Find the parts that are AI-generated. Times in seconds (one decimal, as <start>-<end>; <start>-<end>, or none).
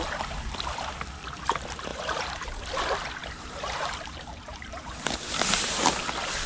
1.9-2.5; 3.2-5.8